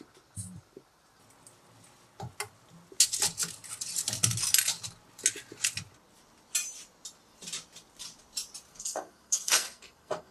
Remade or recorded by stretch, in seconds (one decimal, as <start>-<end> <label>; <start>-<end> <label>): 0.0-8.7 recorded; 8.7-10.3 remade